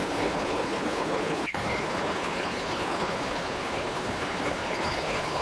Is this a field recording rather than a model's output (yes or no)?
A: no